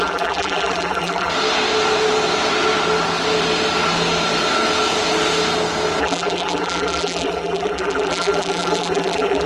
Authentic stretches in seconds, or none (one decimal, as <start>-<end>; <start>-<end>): 1.3-6.0

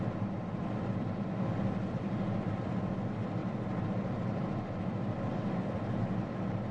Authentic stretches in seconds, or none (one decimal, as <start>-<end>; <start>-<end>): 0.0-0.6; 2.9-3.4; 6.0-6.7

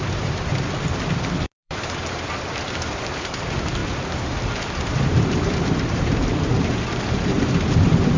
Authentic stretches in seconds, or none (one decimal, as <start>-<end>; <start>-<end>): 0.5-1.3